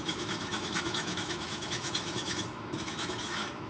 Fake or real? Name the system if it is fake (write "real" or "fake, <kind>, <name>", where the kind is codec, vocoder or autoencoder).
fake, autoencoder, DAC-VAE